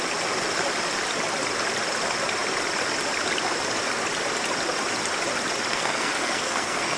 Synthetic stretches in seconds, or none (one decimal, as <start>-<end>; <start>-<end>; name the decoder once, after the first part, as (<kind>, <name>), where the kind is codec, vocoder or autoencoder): 5.7-7.0 (codec, SNAC)